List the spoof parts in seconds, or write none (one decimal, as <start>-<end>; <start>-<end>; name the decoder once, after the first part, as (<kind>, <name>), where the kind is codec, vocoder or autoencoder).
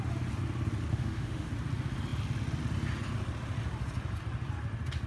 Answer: 0.9-1.5 (autoencoder, DAC-VAE)